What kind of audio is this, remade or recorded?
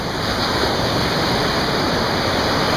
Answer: recorded